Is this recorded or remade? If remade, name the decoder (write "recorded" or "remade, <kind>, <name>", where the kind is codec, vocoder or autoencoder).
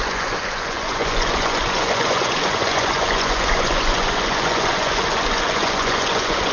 remade, vocoder, Vocos